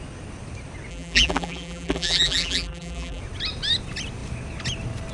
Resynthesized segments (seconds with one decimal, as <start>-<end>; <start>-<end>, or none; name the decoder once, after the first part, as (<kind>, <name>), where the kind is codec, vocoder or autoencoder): 0.9-3.2 (vocoder, BigVGAN v2)